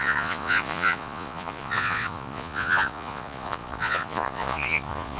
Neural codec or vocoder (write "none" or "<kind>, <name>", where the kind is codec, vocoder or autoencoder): vocoder, Vocos